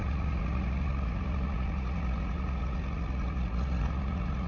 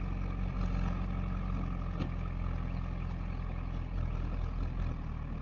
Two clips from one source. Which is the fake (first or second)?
first